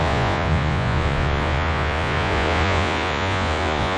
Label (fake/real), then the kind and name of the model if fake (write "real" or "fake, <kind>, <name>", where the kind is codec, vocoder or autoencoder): fake, vocoder, Vocos